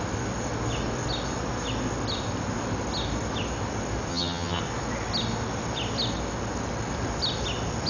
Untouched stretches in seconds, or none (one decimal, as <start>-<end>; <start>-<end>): 0.0-4.1; 4.6-7.9